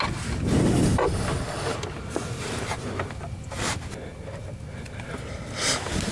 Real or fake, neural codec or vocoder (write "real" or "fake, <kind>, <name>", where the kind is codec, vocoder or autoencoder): real